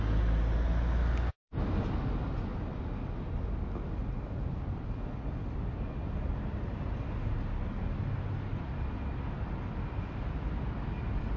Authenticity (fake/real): real